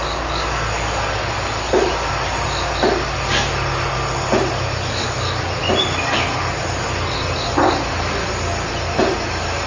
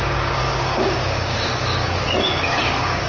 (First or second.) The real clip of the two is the first